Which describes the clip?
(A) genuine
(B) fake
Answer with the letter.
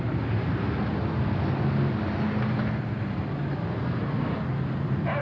A